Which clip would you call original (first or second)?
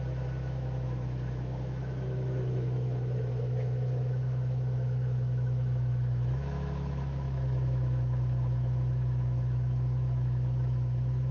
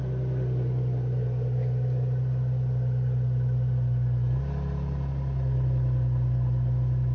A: second